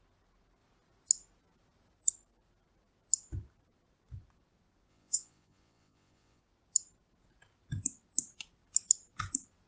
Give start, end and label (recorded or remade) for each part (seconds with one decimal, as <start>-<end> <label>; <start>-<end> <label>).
0.0-4.9 recorded; 4.9-6.4 remade; 6.4-9.7 recorded